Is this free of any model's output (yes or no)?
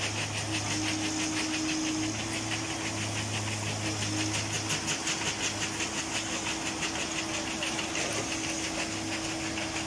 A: yes